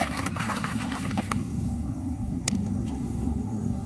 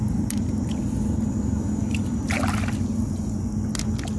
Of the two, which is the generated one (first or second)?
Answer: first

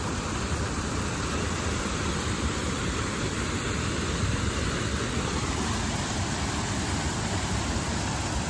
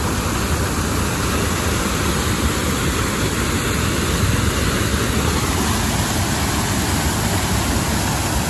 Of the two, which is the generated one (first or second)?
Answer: first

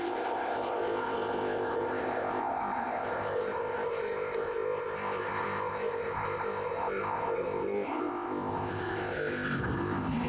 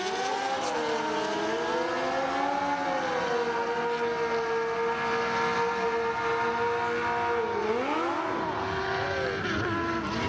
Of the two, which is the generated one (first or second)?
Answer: first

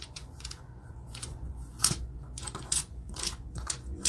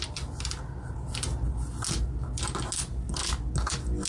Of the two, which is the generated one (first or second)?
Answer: first